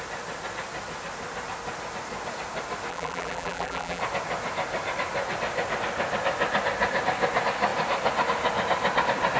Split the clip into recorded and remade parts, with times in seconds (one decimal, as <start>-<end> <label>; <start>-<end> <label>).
0.0-2.9 recorded; 2.9-4.0 remade; 4.0-9.4 recorded